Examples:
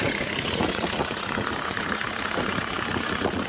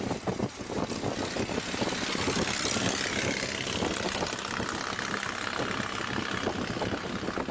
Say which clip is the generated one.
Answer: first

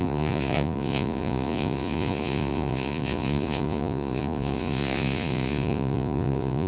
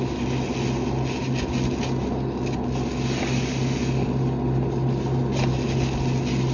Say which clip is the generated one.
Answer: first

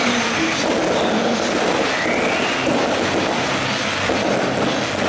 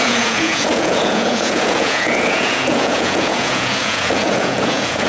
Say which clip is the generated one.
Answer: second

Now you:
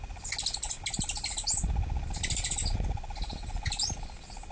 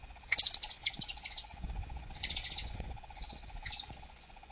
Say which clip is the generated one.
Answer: second